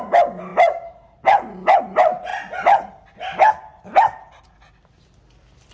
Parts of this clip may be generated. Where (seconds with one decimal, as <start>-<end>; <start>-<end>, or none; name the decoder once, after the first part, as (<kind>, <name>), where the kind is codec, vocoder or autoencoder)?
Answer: none